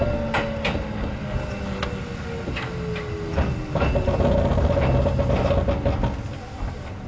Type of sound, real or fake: real